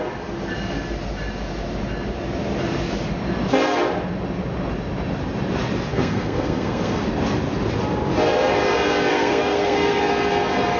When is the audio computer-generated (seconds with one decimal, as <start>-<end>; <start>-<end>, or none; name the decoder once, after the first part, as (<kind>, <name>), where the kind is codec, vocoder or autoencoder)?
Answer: 5.9-7.0 (codec, SNAC); 9.1-10.0